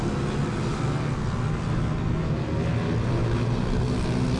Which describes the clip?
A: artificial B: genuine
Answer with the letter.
B